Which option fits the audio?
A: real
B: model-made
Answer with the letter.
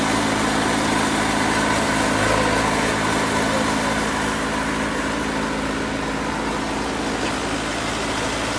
A